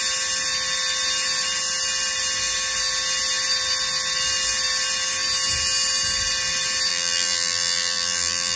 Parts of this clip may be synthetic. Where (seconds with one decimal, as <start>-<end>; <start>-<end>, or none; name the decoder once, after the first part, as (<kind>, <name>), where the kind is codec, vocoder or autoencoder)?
6.9-8.6 (vocoder, BigVGAN v2)